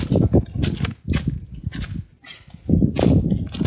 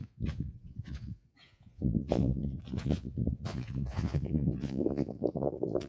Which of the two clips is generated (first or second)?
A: second